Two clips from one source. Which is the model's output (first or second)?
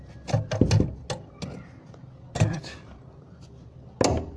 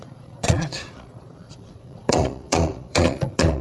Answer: second